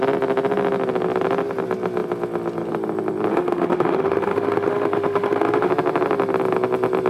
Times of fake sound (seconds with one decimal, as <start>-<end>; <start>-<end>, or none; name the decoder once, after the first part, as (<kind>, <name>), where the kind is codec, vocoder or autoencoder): 3.3-5.7 (autoencoder, DAC-VAE)